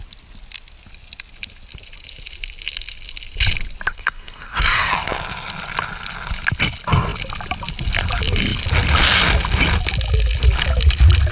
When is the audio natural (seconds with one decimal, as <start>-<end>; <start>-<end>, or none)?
0.0-3.9; 4.9-11.3